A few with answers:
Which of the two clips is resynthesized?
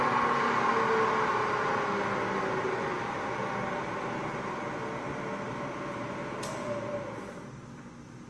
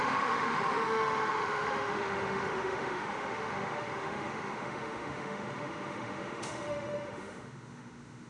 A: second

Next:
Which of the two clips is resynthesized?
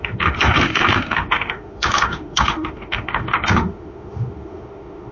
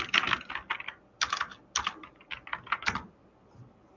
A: first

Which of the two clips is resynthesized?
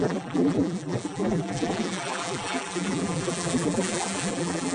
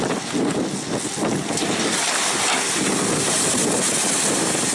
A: first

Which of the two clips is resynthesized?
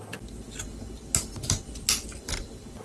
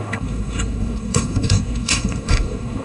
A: second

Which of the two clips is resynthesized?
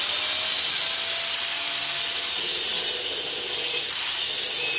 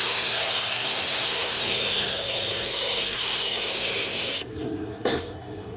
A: second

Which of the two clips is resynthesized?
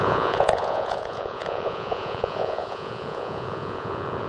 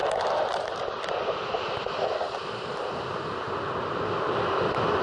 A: first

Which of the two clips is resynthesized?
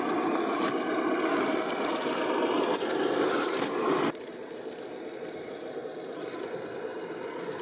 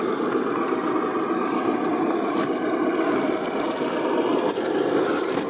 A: second